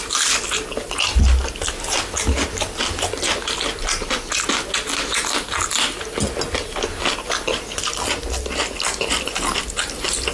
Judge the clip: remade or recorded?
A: recorded